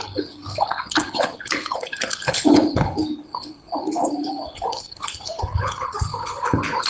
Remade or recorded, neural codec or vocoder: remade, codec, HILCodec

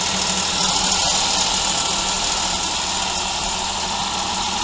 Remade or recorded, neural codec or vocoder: recorded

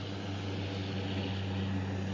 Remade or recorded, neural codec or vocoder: recorded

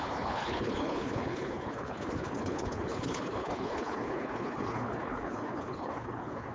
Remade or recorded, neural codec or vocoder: remade, codec, HILCodec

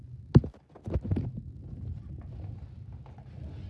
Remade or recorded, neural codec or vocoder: recorded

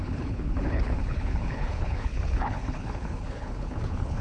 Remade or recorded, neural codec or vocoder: remade, codec, HILCodec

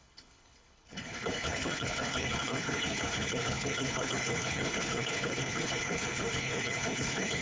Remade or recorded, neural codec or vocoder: remade, codec, HILCodec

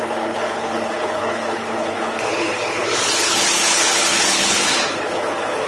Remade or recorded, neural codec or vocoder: remade, codec, HILCodec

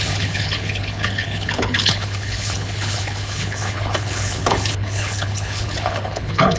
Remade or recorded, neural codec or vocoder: remade, codec, HILCodec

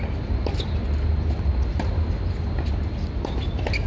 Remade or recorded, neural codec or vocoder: recorded